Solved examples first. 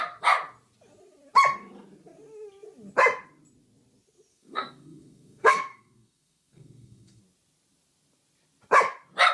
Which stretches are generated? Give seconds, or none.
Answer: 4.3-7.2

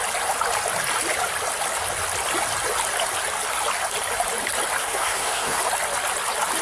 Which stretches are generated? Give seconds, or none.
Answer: 4.8-5.6